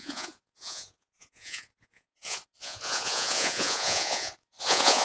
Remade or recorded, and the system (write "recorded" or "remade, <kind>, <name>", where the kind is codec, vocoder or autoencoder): remade, vocoder, Vocos